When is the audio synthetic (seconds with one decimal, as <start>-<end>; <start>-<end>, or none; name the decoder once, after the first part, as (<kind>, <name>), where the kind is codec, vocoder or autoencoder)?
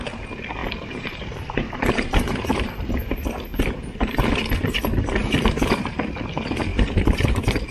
0.6-2.8 (vocoder, BigVGAN v2); 3.5-4.4; 6.7-7.7